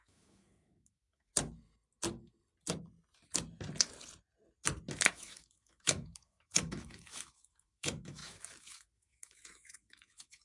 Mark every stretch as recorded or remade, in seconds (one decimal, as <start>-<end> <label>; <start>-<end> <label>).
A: 0.0-1.3 remade; 1.3-5.1 recorded; 5.1-10.4 remade